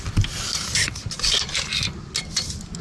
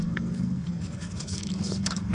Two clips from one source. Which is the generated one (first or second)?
second